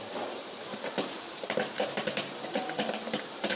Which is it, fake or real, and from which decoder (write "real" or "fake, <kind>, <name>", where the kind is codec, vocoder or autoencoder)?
fake, vocoder, BigVGAN v2